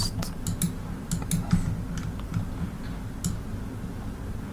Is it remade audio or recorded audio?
recorded